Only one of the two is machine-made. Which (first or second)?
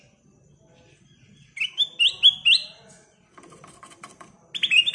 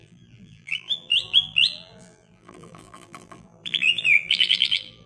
second